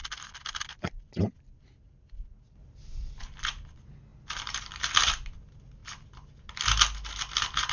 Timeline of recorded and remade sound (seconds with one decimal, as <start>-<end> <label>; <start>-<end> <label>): 0.0-7.7 recorded